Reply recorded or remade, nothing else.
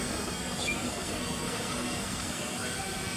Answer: remade